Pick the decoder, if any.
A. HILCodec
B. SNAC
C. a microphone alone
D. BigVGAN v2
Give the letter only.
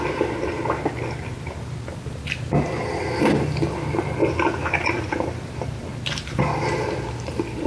D